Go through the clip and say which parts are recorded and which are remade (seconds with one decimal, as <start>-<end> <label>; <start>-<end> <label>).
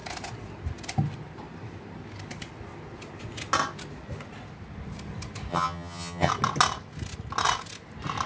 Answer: 0.0-5.5 recorded; 5.5-6.3 remade; 6.3-8.3 recorded